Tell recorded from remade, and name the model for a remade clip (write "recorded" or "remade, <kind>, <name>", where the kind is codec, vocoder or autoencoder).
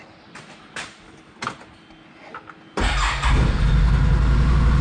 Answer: recorded